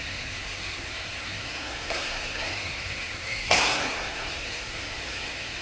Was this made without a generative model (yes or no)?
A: no